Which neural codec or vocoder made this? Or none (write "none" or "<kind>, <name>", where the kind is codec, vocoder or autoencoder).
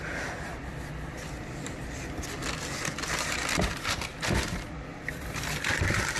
vocoder, BigVGAN v2